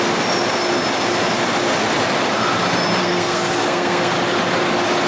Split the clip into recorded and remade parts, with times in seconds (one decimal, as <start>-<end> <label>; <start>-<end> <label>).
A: 0.0-3.0 recorded; 3.0-4.1 remade; 4.1-5.1 recorded